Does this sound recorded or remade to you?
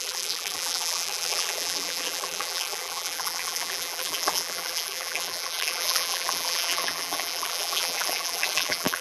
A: remade